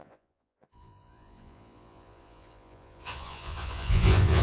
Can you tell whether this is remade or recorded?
remade